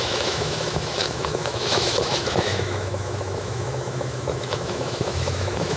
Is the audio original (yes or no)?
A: no